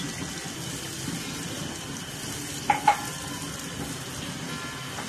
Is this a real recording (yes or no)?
yes